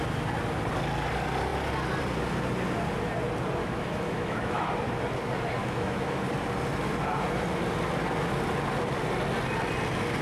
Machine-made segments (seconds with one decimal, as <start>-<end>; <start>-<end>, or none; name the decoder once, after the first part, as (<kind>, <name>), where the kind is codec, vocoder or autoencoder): 3.6-4.7 (autoencoder, DAC-VAE); 5.6-6.2